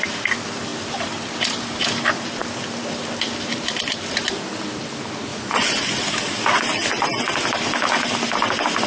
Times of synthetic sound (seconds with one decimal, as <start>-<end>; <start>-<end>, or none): 5.3-6.0

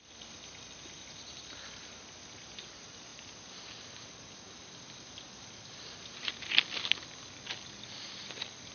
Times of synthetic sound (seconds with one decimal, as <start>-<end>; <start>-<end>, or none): none

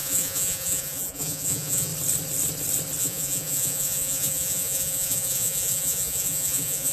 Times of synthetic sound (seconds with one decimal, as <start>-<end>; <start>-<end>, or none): 0.0-1.9; 3.0-6.9

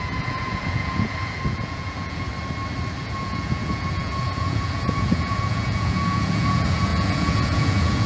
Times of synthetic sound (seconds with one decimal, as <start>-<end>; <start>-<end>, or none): 0.0-2.3; 3.0-8.1

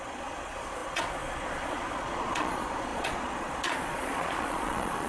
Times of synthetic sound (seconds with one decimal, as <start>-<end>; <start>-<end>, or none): 0.0-5.1

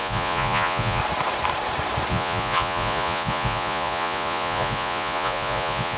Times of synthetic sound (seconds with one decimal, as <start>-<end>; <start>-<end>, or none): 0.0-1.0; 2.1-6.0

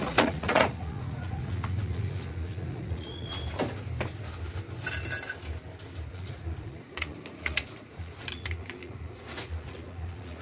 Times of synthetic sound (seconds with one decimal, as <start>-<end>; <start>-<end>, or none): 0.0-3.4; 6.1-10.4

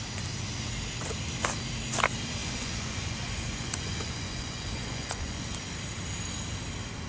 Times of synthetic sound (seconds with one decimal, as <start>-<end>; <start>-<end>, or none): 2.4-5.4